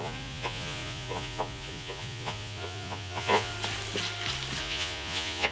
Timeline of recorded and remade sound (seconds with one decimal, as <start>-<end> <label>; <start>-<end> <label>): 0.0-3.5 remade; 3.5-4.6 recorded; 4.6-5.5 remade

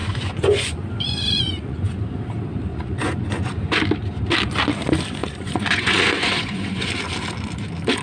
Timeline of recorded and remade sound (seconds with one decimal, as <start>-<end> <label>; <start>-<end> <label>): 0.0-2.0 remade; 2.0-2.7 recorded; 2.7-3.5 remade; 3.5-5.2 recorded; 5.2-6.9 remade; 6.9-8.0 recorded